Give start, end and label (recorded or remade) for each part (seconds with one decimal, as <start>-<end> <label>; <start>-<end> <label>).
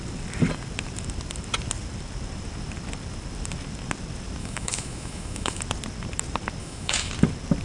0.0-4.4 recorded; 4.4-5.6 remade; 5.6-6.6 recorded; 6.6-7.1 remade; 7.1-7.6 recorded